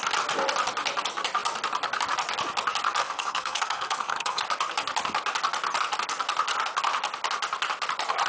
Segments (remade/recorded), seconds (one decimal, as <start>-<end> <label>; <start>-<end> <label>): 0.0-3.0 recorded; 3.0-4.4 remade; 4.4-8.3 recorded